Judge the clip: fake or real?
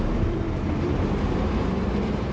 fake